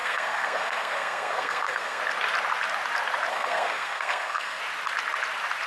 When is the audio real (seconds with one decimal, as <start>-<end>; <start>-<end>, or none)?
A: 2.0-3.3; 4.6-5.7